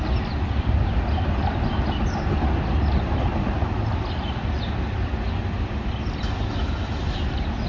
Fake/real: real